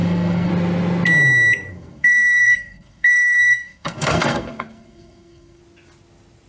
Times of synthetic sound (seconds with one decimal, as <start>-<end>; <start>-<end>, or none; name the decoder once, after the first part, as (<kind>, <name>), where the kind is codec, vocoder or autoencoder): 0.0-0.5 (codec, SNAC); 1.7-5.6